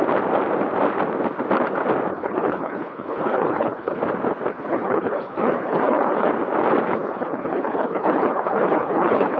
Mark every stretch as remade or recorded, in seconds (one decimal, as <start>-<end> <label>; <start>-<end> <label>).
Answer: 0.0-2.1 recorded; 2.1-4.0 remade; 4.0-4.5 recorded; 4.5-6.3 remade; 6.3-6.9 recorded; 6.9-9.4 remade